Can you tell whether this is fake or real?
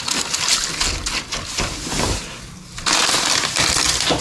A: real